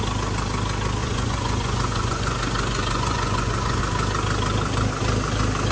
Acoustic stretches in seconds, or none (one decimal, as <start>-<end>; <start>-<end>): 0.0-1.0; 3.8-5.7